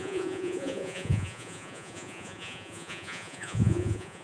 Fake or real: fake